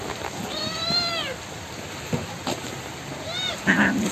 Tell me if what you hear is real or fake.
real